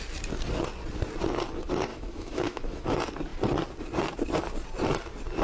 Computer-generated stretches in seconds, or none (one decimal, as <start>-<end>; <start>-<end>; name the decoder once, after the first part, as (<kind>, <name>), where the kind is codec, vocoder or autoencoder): 1.9-2.9 (autoencoder, DAC-VAE)